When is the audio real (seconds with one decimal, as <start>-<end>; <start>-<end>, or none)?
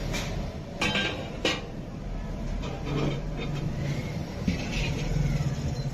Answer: 0.0-1.0; 2.8-4.0; 5.2-5.9